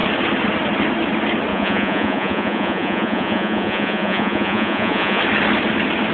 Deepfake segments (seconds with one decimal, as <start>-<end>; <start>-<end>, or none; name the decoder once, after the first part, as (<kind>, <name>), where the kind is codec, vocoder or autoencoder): 1.5-5.2 (vocoder, Vocos)